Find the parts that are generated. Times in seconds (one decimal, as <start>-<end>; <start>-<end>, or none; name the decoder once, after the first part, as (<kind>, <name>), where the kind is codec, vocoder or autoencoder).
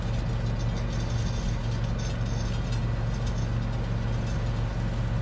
none